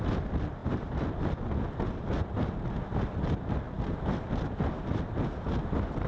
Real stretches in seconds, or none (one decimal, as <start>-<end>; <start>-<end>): 0.0-6.1